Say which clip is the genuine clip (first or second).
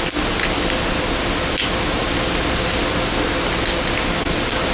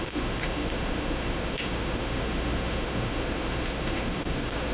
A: first